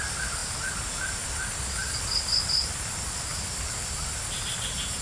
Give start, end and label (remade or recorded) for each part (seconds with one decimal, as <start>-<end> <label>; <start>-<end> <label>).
0.0-5.0 recorded